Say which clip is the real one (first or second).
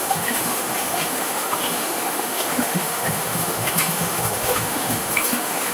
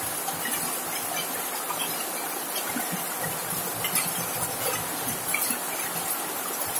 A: second